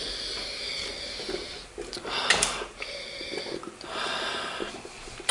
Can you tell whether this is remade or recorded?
recorded